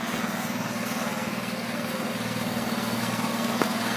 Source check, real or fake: fake